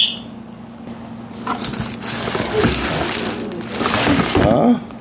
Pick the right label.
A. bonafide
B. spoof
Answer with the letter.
A